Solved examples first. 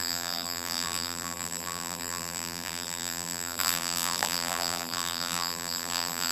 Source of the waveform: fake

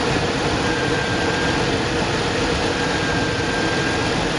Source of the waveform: real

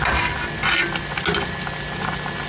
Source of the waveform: real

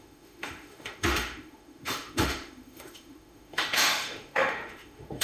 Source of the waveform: fake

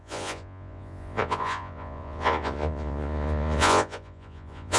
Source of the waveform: fake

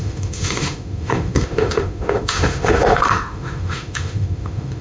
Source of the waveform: fake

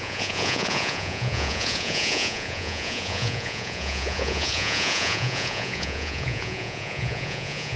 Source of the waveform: fake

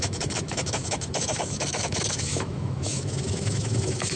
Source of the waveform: fake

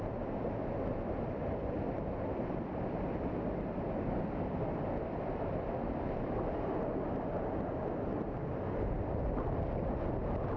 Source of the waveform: real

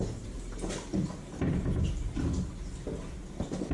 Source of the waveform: real